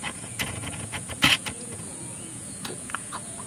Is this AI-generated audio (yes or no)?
yes